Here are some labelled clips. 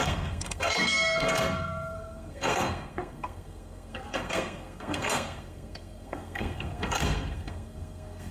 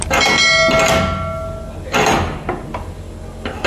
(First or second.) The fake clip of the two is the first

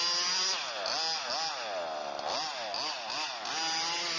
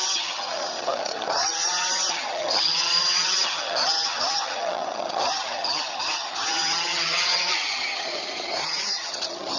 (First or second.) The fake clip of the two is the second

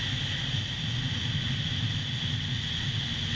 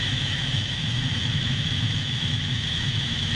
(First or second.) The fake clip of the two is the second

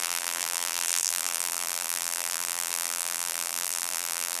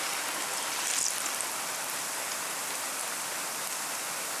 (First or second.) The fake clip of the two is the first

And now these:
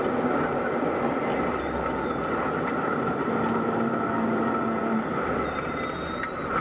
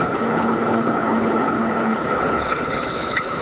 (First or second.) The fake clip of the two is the second